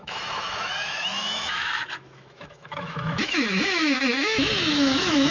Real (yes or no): no